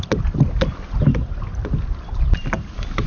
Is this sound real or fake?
real